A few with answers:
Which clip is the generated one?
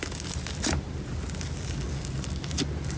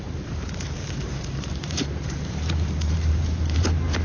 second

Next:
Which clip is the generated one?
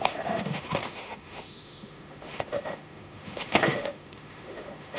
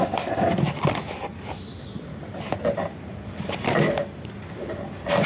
first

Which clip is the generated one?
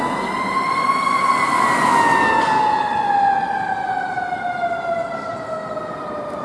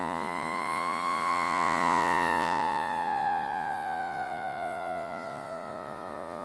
second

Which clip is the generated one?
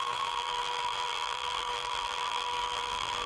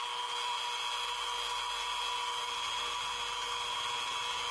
first